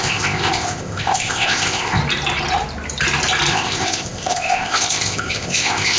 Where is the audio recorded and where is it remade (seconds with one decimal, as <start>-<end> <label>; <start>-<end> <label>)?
0.0-2.0 remade; 2.0-3.5 recorded; 3.5-6.0 remade